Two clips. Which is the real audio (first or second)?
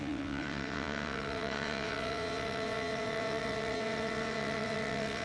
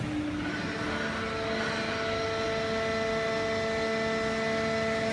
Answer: second